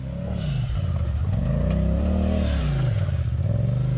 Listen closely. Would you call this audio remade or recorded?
recorded